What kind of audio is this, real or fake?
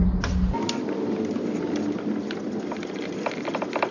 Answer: real